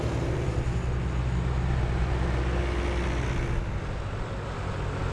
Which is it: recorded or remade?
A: recorded